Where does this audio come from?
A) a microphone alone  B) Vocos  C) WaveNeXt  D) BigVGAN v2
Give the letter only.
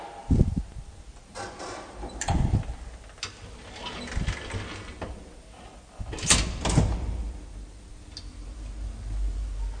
A